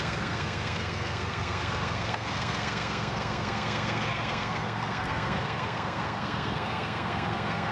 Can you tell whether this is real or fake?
fake